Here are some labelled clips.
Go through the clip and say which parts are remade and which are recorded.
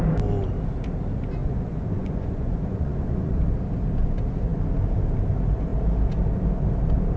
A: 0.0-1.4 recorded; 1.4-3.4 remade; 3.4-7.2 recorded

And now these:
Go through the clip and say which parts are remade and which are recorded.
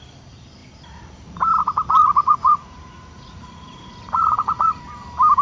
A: 0.0-2.0 recorded; 2.0-4.8 remade; 4.8-5.4 recorded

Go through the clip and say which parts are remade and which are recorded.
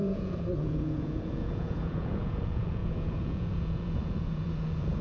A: 0.0-5.0 remade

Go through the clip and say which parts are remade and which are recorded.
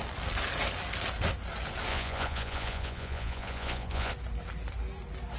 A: 0.0-1.9 recorded; 1.9-4.1 remade; 4.1-5.4 recorded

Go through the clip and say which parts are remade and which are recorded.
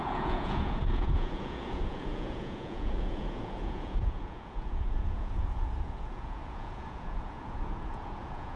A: 0.0-8.6 remade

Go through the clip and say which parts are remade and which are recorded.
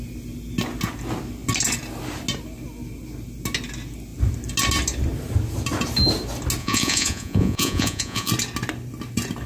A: 0.0-6.6 recorded; 6.6-8.3 remade; 8.3-9.5 recorded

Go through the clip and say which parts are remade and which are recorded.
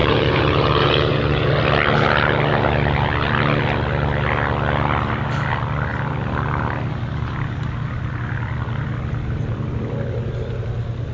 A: 0.0-1.5 remade; 1.5-11.1 recorded